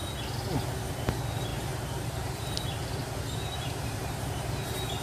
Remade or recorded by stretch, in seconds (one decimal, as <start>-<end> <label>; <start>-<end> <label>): 0.0-1.5 recorded; 1.5-4.5 remade; 4.5-5.0 recorded